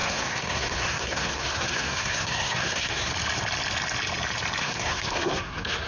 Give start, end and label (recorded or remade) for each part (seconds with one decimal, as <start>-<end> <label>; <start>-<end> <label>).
0.0-3.1 remade; 3.1-4.6 recorded; 4.6-5.9 remade